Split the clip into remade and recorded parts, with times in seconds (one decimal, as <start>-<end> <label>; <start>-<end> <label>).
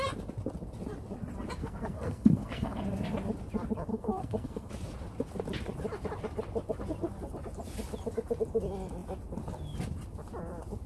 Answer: 0.0-1.6 recorded; 1.6-2.8 remade; 2.8-3.9 recorded; 3.9-4.7 remade; 4.7-10.9 recorded